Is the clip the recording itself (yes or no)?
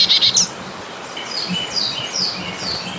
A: yes